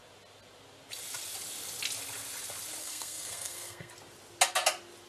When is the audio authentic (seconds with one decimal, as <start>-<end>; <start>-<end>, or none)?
0.0-2.8; 3.9-5.1